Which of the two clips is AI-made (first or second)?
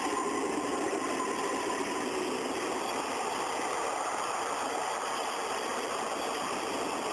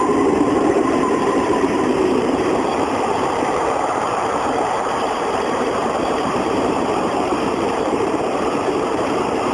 second